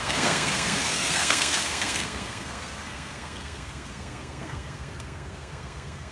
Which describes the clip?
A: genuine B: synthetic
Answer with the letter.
B